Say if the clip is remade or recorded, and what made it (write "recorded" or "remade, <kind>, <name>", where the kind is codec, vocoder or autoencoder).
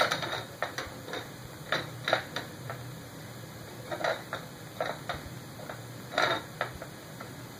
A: remade, vocoder, BigVGAN v2